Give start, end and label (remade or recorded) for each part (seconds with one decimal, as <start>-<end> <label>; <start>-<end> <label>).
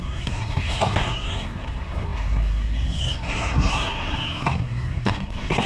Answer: 0.0-5.7 remade